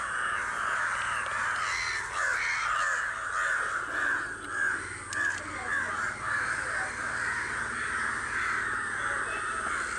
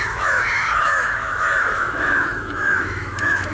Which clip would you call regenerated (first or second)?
second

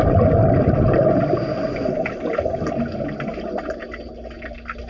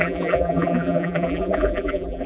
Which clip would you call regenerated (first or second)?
second